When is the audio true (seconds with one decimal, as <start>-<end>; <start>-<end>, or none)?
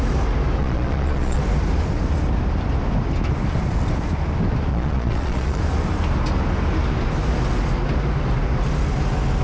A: 0.0-0.6; 1.4-4.7; 5.6-9.4